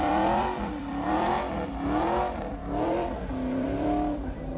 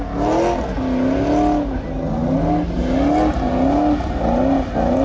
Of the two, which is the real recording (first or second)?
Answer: second